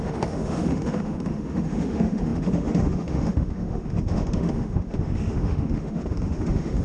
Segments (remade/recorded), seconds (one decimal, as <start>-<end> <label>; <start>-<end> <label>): 0.0-6.8 remade